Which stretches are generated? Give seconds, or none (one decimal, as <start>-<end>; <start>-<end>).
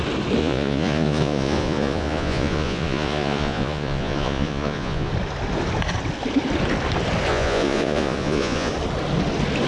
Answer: 0.4-5.1; 7.3-8.7